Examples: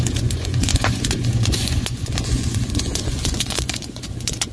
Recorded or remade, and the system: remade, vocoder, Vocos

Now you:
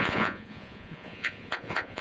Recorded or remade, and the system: remade, vocoder, Vocos